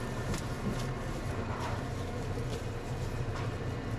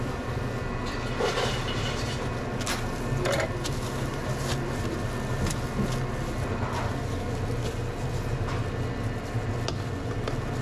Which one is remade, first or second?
first